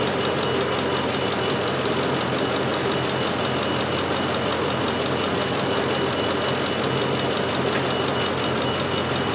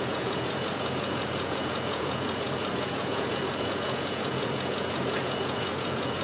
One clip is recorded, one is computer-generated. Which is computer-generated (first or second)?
second